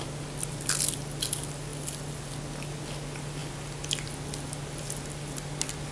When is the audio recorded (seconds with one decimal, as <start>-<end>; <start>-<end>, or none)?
0.0-5.9